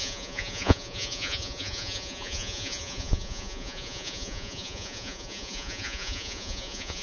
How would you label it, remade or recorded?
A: remade